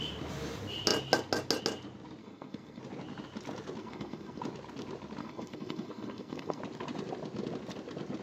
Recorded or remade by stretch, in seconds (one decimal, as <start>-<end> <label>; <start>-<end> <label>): 0.0-2.2 recorded; 2.2-2.8 remade; 2.8-3.8 recorded; 3.8-4.4 remade; 4.4-5.2 recorded; 5.2-6.6 remade; 6.6-8.2 recorded